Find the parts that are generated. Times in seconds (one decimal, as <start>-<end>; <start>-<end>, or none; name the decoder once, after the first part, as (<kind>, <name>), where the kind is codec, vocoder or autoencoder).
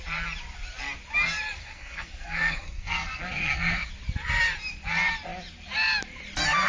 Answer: 1.6-3.9 (codec, SNAC)